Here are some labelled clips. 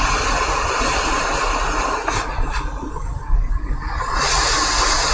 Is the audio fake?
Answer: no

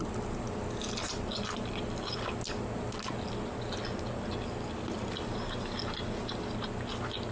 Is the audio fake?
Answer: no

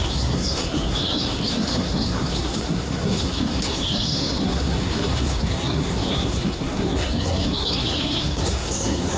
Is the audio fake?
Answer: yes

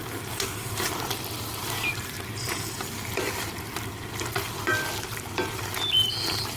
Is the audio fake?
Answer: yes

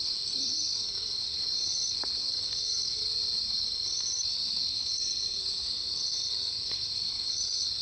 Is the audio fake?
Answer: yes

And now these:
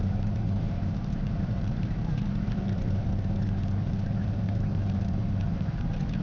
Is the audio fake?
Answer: yes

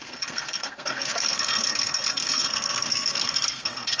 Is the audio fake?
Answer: yes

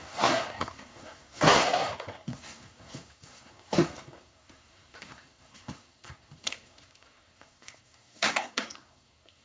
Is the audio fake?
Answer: yes